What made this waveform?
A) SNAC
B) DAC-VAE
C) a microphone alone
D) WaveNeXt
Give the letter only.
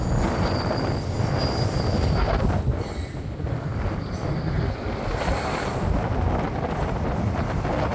C